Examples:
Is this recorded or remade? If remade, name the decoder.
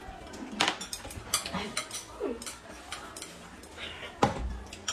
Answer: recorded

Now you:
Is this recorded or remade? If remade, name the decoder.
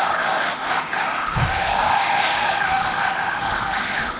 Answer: remade, autoencoder, DAC-VAE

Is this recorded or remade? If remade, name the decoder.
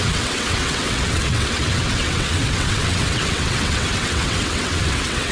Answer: remade, vocoder, WaveNeXt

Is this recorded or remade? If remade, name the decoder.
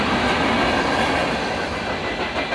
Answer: recorded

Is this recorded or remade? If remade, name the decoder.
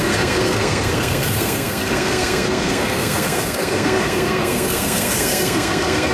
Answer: remade, codec, SNAC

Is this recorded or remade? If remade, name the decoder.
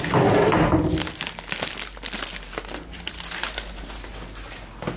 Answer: recorded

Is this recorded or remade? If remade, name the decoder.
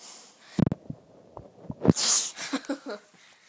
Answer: recorded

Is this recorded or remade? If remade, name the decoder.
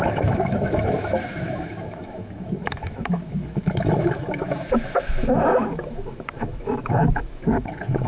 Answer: remade, autoencoder, DAC-VAE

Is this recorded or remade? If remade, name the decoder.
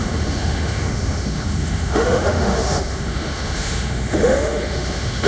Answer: remade, autoencoder, DAC-VAE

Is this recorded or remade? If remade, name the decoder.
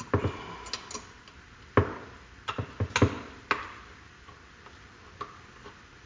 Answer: recorded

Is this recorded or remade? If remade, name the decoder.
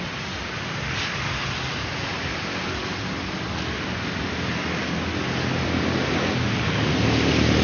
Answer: recorded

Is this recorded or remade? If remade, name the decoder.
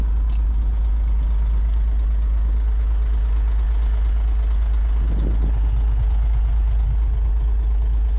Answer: recorded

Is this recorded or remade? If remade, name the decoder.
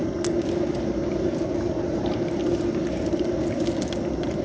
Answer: recorded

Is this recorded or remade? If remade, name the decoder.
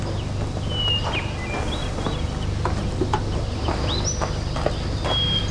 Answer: recorded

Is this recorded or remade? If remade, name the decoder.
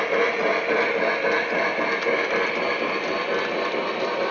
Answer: recorded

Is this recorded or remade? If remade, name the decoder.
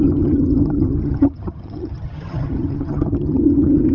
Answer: remade, vocoder, HiFi-GAN